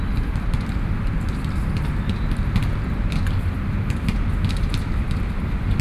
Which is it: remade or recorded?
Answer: recorded